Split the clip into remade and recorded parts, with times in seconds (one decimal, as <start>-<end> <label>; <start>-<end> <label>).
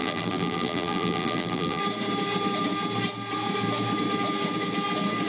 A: 0.0-1.8 remade; 1.8-5.3 recorded